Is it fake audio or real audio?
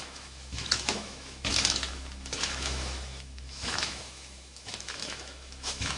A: fake